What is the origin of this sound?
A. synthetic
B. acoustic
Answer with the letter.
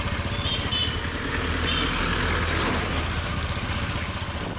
B